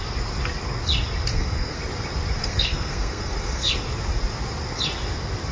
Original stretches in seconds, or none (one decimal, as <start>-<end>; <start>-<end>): 0.0-1.3; 1.8-2.4; 3.8-5.5